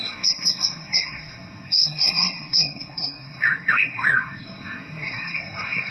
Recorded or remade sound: remade